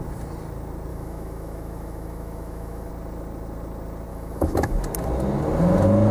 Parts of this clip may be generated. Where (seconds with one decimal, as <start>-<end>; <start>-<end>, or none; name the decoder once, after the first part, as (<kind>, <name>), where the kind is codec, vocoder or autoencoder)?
0.9-2.9 (autoencoder, DAC-VAE); 4.1-4.7